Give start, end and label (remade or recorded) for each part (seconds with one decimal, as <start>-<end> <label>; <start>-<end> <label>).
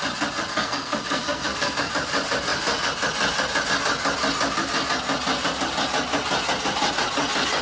0.0-0.5 recorded; 0.5-1.9 remade; 1.9-7.6 recorded